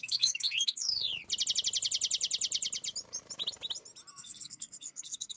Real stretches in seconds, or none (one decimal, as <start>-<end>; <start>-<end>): 1.1-4.1